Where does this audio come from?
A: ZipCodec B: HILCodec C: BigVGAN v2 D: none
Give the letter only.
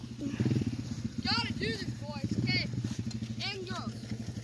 D